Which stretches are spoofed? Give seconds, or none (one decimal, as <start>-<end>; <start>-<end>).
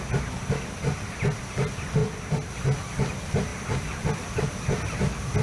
2.0-2.5; 3.5-4.5